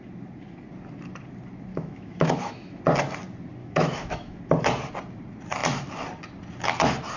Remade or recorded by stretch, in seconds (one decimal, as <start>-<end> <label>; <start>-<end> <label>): 0.0-1.7 recorded; 1.7-2.8 remade; 2.8-3.6 recorded; 3.6-4.4 remade; 4.4-7.2 recorded